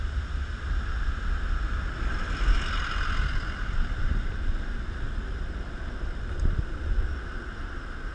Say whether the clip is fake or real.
real